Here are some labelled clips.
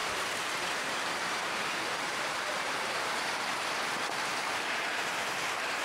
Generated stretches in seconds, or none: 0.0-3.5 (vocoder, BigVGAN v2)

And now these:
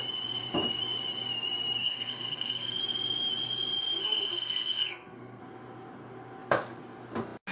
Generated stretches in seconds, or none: 1.8-2.8 (codec, SNAC); 4.0-5.4

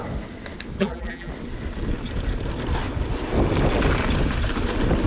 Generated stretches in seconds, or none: 0.8-1.3 (vocoder, BigVGAN v2)

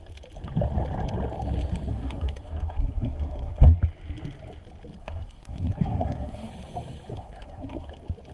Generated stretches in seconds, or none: 1.9-3.8 (codec, SNAC); 5.0-6.5; 7.1-7.9

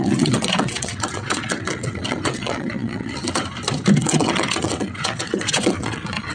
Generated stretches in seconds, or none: 0.0-3.4 (vocoder, WaveNeXt); 4.0-6.3

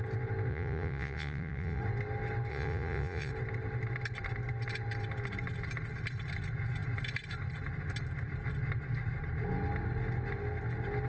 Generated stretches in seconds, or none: 0.5-1.8 (vocoder, Vocos); 2.5-3.3

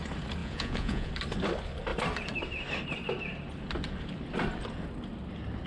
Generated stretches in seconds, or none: 0.4-1.1 (vocoder, Vocos)

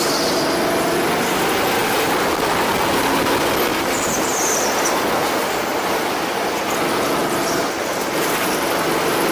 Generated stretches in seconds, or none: 3.7-4.4 (vocoder, BigVGAN v2); 5.7-6.6; 7.2-8.7